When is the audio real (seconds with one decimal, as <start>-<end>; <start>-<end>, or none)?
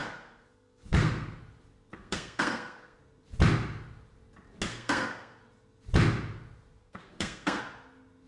1.4-1.9; 3.0-4.7; 5.4-6.8; 7.6-8.3